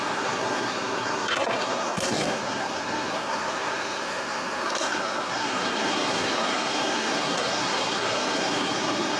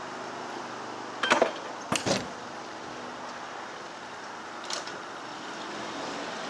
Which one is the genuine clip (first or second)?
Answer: second